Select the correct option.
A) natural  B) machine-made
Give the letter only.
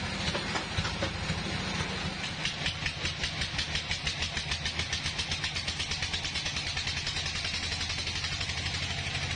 A